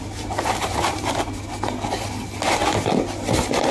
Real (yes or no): yes